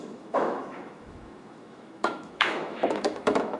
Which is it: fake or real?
fake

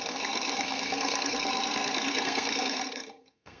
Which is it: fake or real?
fake